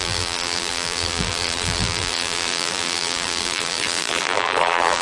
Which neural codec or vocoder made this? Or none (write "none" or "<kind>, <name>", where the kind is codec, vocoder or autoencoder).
vocoder, BigVGAN v2